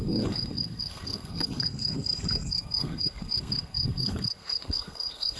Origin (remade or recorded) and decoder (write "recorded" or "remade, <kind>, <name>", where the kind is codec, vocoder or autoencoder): remade, codec, SNAC